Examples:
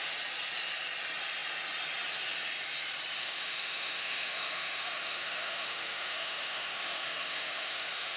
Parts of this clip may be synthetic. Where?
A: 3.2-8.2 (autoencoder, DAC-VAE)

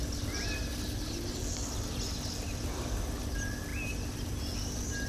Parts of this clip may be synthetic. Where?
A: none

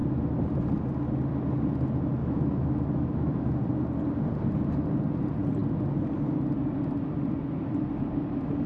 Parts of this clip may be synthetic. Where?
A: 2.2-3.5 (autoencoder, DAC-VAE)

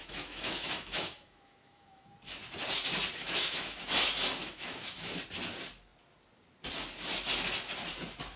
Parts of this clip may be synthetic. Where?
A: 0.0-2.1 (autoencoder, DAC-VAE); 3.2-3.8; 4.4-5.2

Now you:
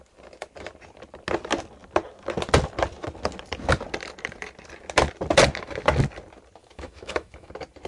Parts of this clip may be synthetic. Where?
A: 6.6-7.5 (autoencoder, DAC-VAE)

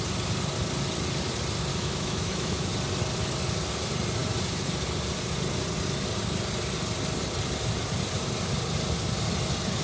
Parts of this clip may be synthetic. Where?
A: 1.7-2.7 (autoencoder, DAC-VAE)

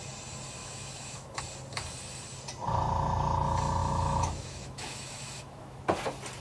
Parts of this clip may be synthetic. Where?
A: 0.6-1.4 (autoencoder, DAC-VAE); 3.8-5.8